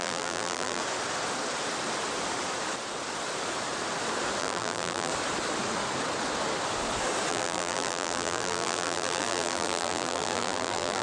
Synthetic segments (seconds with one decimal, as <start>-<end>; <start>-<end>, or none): 0.0-0.8; 4.4-5.1; 7.3-11.0